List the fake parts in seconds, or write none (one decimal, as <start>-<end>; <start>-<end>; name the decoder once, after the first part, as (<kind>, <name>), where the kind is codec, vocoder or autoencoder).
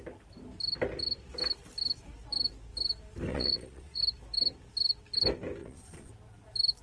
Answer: 3.3-4.0 (vocoder, Vocos); 5.6-6.1